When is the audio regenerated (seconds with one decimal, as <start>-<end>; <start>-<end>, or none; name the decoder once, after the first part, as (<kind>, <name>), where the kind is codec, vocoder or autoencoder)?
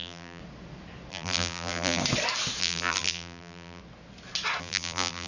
0.0-0.4 (vocoder, BigVGAN v2); 1.1-2.0; 2.6-3.8; 4.6-5.3